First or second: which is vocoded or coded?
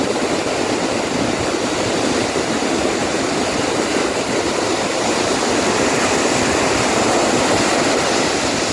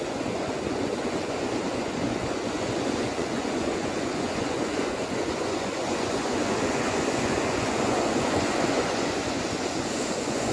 second